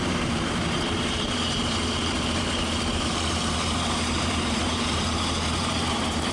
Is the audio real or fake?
fake